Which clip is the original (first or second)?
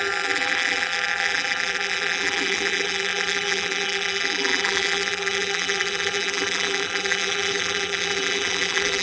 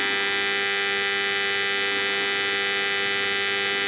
second